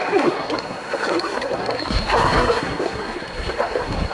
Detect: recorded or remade remade